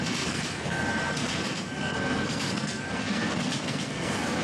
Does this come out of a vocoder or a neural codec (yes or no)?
yes